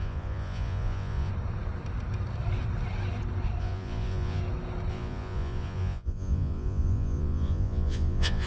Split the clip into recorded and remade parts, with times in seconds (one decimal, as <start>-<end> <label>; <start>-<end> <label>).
0.0-1.3 remade; 1.3-3.6 recorded; 3.6-4.4 remade; 4.4-4.9 recorded; 4.9-8.5 remade